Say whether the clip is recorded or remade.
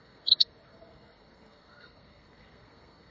remade